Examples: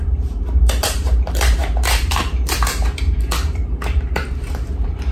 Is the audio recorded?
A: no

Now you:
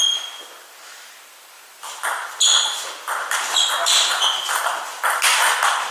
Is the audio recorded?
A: yes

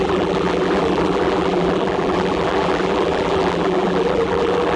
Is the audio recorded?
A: no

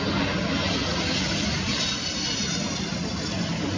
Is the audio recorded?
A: yes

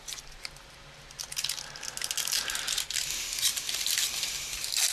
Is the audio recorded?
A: yes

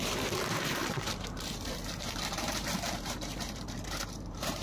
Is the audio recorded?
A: no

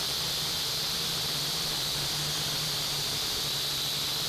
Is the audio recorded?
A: no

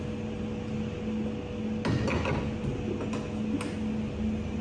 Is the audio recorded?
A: yes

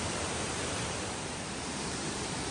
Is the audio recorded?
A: no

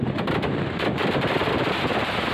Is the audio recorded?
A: no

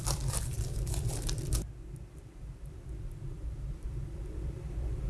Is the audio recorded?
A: no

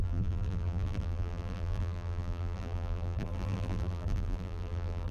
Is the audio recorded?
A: no